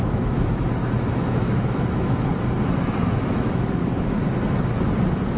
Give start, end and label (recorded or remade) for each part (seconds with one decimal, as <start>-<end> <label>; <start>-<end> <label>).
0.0-2.3 remade; 2.3-3.1 recorded; 3.1-4.2 remade; 4.2-5.4 recorded